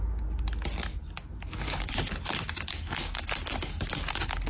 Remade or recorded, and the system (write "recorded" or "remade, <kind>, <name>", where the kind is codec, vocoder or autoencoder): recorded